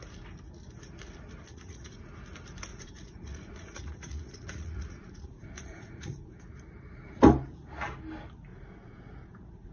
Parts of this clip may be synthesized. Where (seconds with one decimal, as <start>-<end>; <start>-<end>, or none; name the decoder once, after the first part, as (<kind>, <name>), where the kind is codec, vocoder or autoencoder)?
1.5-2.0 (vocoder, Vocos); 2.7-6.4; 8.5-9.7